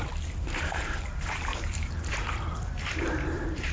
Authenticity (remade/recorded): remade